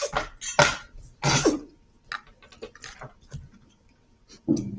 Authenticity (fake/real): real